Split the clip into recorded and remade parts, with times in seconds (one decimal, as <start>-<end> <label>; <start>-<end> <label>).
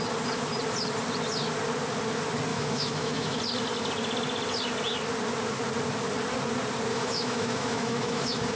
0.0-2.5 recorded; 2.5-3.4 remade; 3.4-6.9 recorded; 6.9-8.6 remade